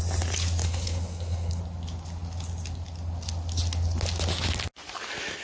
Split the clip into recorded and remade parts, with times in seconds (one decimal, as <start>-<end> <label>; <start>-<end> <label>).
0.0-0.6 recorded; 0.6-1.6 remade; 1.6-5.4 recorded